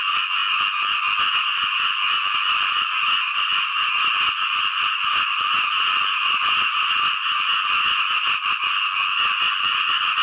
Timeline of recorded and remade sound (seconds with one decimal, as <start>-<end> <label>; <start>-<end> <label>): 0.0-10.2 recorded